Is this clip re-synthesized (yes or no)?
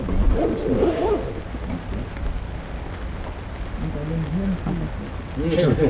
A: no